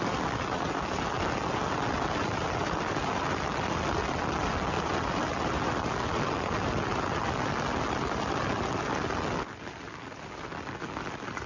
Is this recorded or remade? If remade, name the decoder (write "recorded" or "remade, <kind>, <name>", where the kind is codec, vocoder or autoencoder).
recorded